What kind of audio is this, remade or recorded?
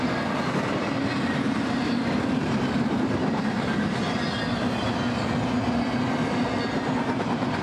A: recorded